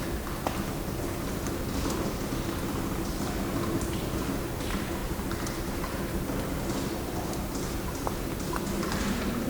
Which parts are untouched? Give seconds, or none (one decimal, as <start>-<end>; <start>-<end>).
0.0-9.5